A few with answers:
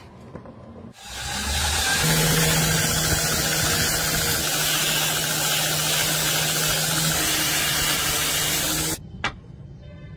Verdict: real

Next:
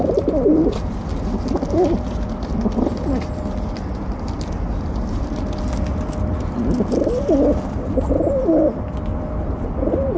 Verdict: real